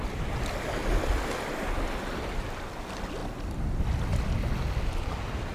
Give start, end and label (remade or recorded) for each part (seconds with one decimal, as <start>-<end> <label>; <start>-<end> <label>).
0.0-5.5 recorded